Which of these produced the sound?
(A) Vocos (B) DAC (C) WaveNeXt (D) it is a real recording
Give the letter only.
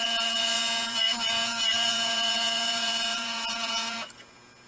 A